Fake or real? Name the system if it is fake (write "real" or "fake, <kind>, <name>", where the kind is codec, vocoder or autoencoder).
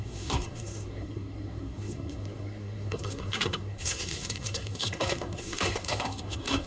fake, codec, SNAC